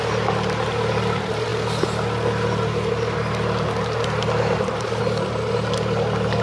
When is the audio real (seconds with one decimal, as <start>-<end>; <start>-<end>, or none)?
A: 0.0-6.4